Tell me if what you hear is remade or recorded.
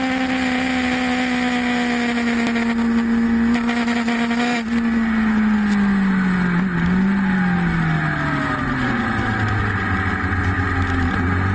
recorded